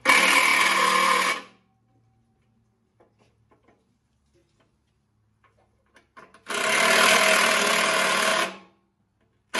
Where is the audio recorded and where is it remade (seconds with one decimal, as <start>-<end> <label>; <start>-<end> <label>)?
0.0-8.3 recorded; 8.3-9.0 remade; 9.0-9.6 recorded